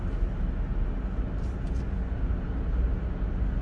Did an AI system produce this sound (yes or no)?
no